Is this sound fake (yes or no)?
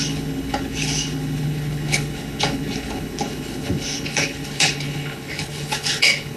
yes